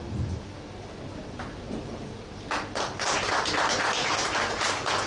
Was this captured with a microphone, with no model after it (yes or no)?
yes